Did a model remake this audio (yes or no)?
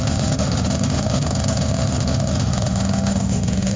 yes